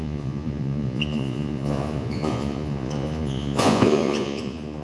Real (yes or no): no